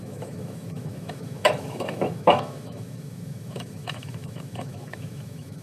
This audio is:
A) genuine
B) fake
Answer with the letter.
B